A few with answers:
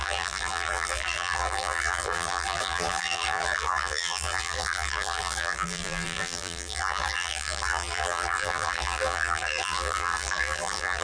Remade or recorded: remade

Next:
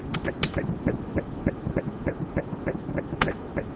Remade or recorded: recorded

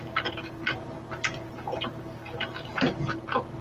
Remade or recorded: recorded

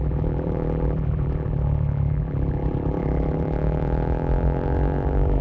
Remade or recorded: remade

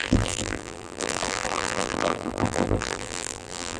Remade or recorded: remade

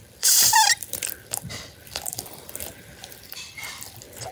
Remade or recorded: remade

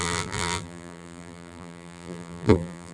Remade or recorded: remade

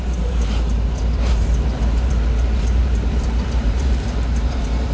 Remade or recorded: remade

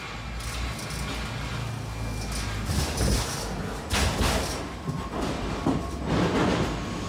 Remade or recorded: recorded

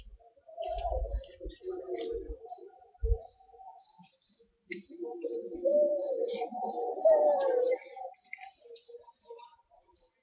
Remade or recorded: remade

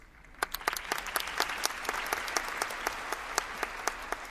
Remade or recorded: recorded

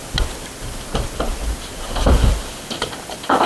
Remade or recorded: remade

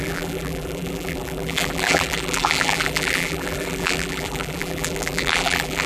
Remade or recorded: remade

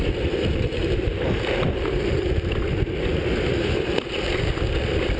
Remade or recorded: recorded